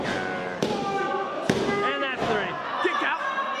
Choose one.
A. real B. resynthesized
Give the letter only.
A